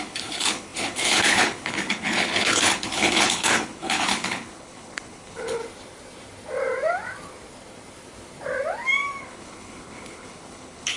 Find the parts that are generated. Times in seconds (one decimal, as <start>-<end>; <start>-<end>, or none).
0.0-5.6; 9.2-11.0